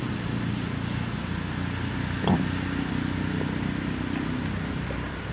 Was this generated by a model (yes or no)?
no